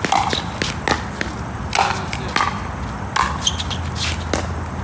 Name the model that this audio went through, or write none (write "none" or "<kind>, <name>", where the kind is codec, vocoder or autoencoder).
none